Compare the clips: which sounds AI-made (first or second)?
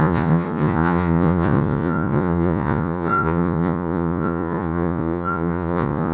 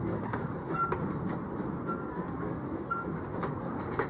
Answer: first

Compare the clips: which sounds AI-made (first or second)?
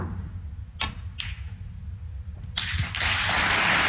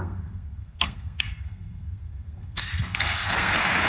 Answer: second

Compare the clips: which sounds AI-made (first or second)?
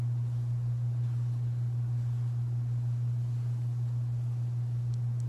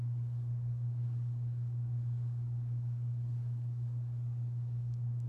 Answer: second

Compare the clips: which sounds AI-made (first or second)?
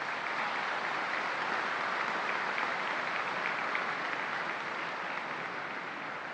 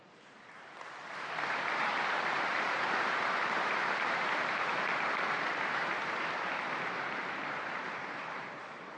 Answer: second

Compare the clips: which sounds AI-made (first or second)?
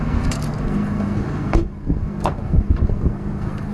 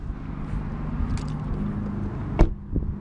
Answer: first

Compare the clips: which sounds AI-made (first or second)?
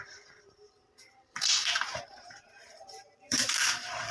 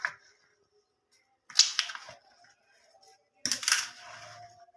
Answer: first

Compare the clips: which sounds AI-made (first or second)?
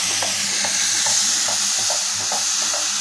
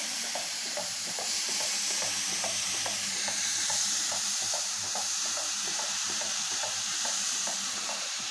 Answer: second